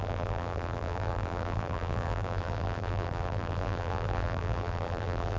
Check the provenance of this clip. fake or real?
fake